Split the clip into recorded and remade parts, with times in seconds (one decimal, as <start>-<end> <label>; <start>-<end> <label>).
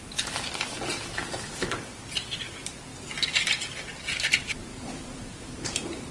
0.0-4.7 recorded; 4.7-6.1 remade